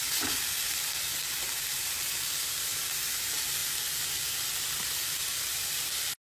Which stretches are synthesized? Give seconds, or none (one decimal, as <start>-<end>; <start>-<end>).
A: none